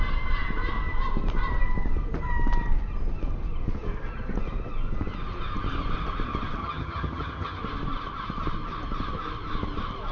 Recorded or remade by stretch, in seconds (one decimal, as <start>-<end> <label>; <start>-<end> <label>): 0.0-6.6 recorded; 6.6-7.6 remade; 7.6-10.1 recorded